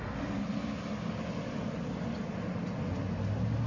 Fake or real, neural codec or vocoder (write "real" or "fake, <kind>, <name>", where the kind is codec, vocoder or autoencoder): real